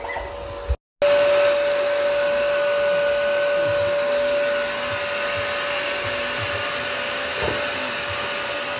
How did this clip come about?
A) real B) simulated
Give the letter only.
A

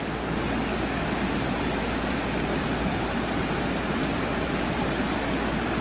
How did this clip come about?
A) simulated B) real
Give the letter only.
B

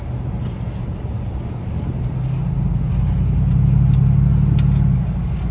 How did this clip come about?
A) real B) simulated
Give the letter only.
A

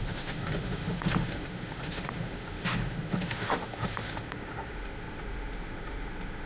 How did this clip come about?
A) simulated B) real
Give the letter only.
A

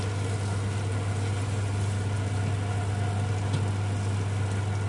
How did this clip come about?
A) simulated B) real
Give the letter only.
B